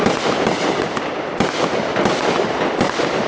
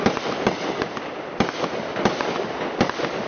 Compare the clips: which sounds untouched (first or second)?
second